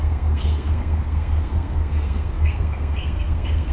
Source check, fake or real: fake